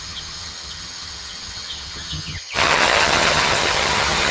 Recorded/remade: remade